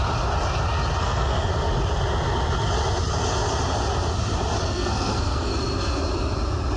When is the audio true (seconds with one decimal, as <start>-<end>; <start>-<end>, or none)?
0.0-1.0; 1.5-4.6; 5.5-6.8